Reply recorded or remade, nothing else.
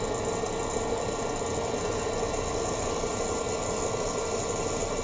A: recorded